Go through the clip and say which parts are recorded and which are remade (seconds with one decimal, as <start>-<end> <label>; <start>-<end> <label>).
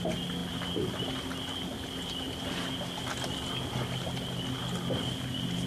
0.0-5.7 recorded